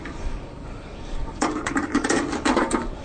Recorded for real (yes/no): no